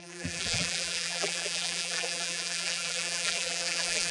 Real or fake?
fake